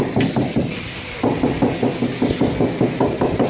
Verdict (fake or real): real